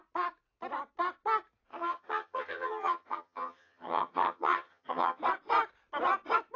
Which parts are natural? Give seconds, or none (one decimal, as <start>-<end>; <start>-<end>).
0.0-1.7; 5.2-6.6